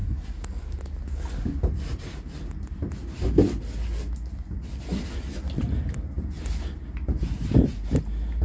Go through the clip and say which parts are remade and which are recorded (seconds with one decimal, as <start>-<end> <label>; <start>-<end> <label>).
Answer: 0.0-8.4 recorded